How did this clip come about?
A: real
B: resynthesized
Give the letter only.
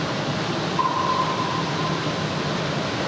A